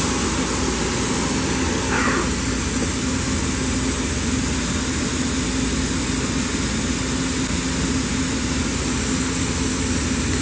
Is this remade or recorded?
recorded